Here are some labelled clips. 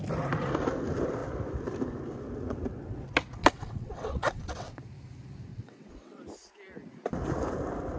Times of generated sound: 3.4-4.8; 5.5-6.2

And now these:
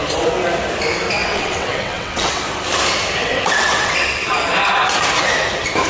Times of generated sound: 1.2-2.4; 3.2-4.3

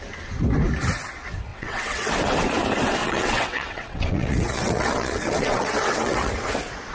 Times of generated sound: 1.5-2.1; 3.0-6.3

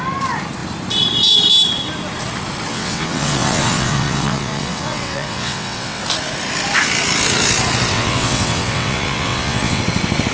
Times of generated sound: 2.7-6.0; 7.9-9.8

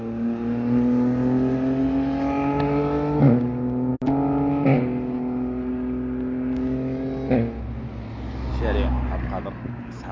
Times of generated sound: none